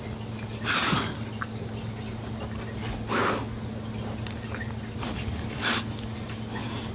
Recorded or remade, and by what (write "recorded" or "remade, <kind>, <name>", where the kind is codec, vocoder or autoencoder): recorded